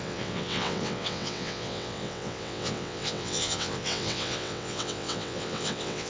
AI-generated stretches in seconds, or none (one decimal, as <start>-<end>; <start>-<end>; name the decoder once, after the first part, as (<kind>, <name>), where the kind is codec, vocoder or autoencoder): 0.0-6.1 (vocoder, WaveNeXt)